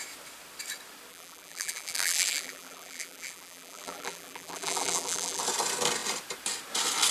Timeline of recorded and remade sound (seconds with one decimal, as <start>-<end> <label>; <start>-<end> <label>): 0.0-1.1 recorded; 1.1-5.4 remade; 5.4-7.1 recorded